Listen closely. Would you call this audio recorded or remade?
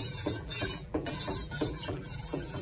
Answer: remade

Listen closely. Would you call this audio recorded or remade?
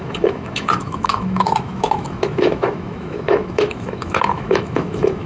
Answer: remade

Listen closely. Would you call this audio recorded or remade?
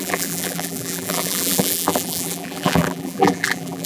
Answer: remade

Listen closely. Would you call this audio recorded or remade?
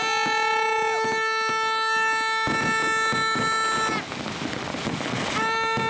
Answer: recorded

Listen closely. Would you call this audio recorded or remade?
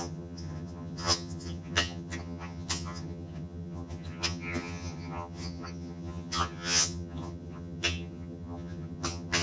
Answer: remade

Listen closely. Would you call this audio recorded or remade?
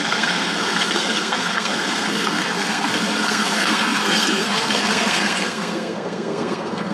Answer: remade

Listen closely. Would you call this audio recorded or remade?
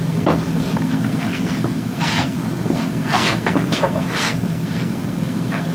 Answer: remade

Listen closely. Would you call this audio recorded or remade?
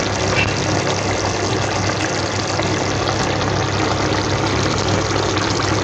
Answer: recorded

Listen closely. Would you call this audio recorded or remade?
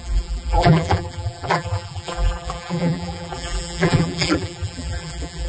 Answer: remade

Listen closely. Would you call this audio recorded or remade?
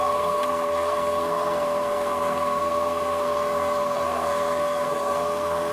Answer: remade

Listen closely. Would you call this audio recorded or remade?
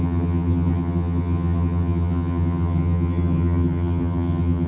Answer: remade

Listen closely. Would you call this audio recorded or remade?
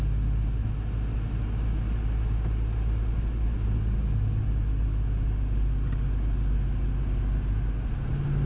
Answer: recorded